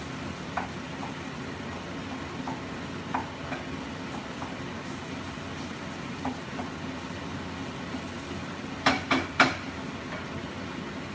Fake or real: real